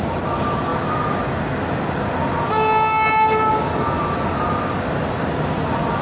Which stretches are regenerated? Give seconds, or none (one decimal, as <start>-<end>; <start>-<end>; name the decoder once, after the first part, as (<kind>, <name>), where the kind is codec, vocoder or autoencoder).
none